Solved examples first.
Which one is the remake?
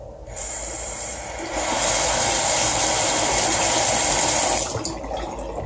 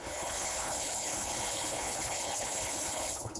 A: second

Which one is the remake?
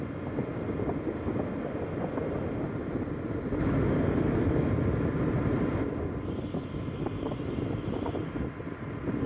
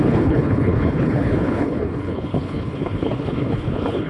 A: second